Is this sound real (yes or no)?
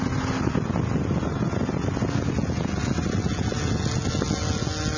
yes